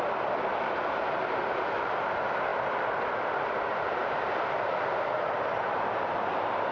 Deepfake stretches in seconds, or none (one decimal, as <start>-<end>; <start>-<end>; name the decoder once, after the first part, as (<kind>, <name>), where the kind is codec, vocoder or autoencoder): none